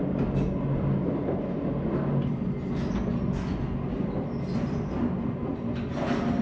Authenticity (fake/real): real